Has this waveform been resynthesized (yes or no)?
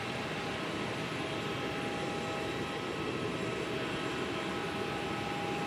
no